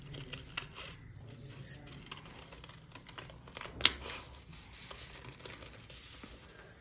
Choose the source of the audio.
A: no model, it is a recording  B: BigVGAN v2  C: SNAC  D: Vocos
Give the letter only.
A